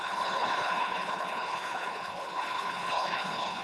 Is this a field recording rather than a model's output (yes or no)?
no